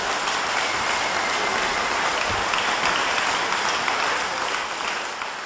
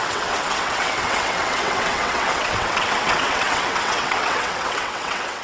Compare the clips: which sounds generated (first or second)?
second